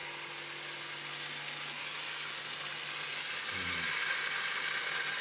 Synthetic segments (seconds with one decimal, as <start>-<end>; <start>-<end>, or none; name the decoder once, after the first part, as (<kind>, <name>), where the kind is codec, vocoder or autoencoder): none